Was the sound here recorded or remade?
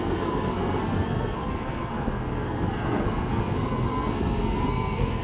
remade